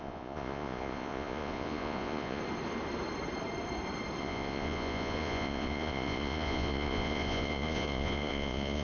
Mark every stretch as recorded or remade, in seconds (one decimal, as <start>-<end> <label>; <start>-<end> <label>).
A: 0.0-2.4 remade; 2.4-4.2 recorded; 4.2-8.8 remade